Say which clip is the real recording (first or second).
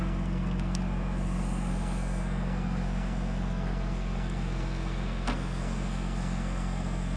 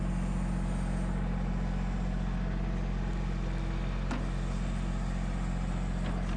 second